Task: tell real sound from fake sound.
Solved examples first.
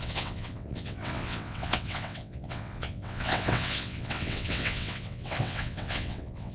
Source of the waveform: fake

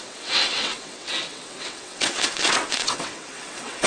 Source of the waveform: fake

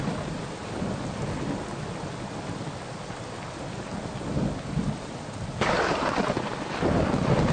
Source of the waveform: real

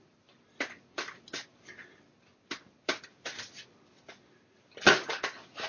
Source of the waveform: real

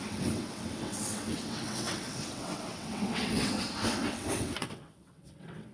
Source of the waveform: fake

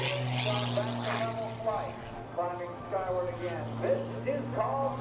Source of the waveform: real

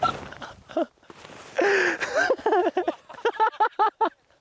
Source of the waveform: real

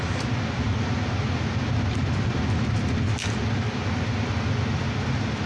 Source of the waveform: real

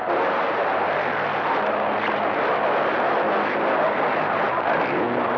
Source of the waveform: real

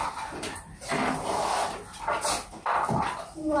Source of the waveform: real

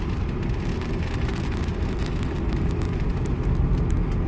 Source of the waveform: real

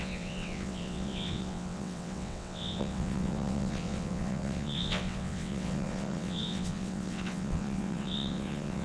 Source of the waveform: fake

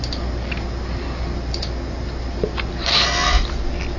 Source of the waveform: real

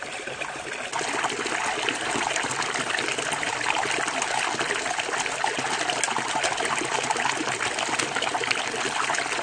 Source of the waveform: real